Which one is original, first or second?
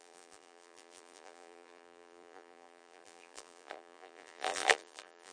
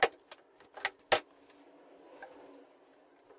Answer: second